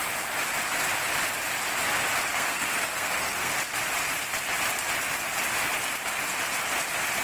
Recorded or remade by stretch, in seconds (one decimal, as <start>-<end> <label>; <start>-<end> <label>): 0.0-2.3 recorded; 2.3-3.5 remade; 3.5-7.2 recorded